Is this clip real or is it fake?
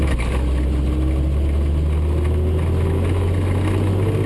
real